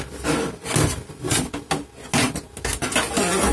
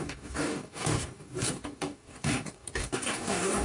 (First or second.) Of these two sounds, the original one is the first